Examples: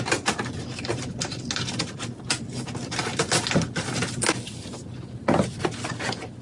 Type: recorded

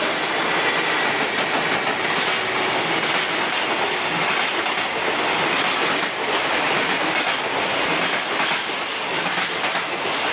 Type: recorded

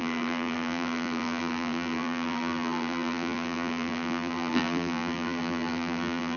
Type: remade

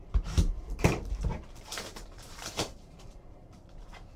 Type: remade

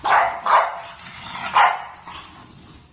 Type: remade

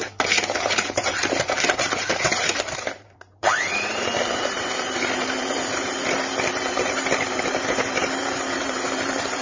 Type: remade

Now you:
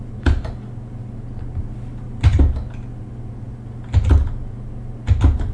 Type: recorded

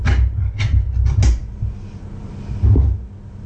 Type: recorded